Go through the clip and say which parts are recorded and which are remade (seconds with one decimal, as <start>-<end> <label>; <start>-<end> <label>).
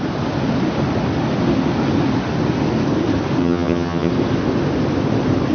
0.0-3.4 recorded; 3.4-4.1 remade; 4.1-5.5 recorded